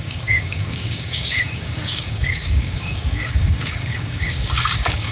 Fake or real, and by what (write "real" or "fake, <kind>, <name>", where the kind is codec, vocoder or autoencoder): fake, codec, DAC